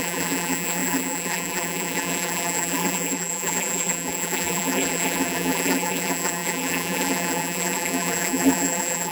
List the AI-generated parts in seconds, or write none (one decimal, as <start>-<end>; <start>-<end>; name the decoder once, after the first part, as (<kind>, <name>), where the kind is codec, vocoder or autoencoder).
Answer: 0.0-9.1 (vocoder, BigVGAN v2)